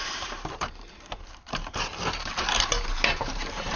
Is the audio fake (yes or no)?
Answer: yes